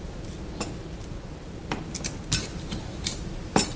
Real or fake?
real